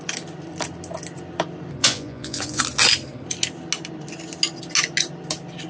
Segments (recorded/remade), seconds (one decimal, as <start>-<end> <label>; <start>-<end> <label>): 0.0-1.8 recorded; 1.8-2.6 remade; 2.6-5.7 recorded